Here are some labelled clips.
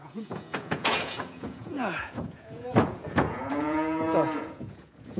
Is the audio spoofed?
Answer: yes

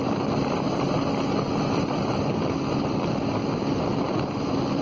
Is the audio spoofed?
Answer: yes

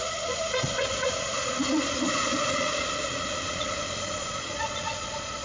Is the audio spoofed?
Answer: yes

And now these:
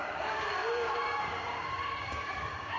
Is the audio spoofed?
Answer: yes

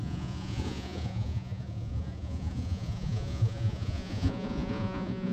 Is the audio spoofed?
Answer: yes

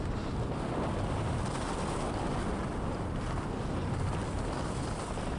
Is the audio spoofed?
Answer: no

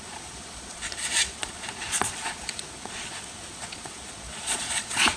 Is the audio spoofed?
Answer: yes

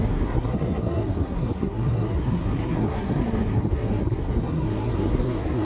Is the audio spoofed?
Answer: yes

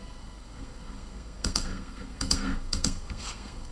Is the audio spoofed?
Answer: yes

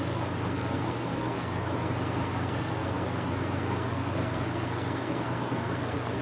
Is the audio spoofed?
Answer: yes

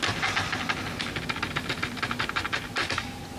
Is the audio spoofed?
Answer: no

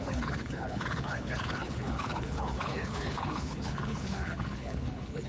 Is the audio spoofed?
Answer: yes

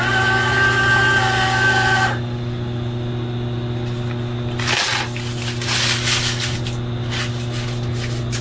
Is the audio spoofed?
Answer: no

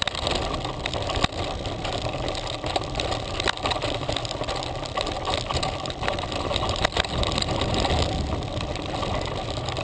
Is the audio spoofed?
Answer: no